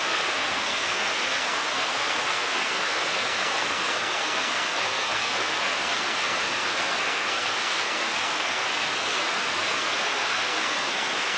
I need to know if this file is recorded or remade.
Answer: remade